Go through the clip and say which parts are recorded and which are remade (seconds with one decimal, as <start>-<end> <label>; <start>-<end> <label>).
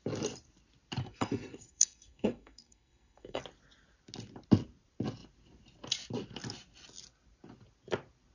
0.0-1.0 recorded; 1.0-3.4 remade; 3.4-8.3 recorded